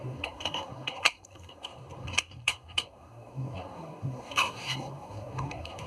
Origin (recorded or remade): remade